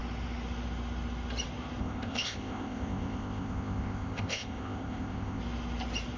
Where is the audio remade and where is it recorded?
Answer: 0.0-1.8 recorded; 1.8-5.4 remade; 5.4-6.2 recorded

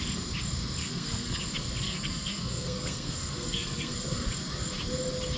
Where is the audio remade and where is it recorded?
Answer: 0.0-0.8 recorded; 0.8-1.4 remade; 1.4-1.8 recorded; 1.8-4.3 remade; 4.3-5.4 recorded